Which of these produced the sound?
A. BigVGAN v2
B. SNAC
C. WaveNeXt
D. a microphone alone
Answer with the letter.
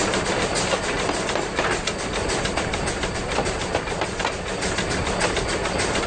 D